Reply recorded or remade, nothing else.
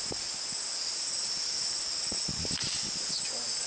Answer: recorded